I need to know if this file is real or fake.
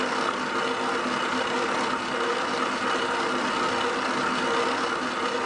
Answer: real